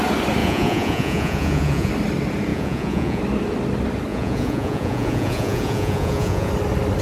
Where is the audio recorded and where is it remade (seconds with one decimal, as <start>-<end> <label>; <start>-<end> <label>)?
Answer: 0.0-0.4 recorded; 0.4-1.9 remade; 1.9-2.5 recorded; 2.5-3.2 remade; 3.2-4.1 recorded; 4.1-6.5 remade; 6.5-7.0 recorded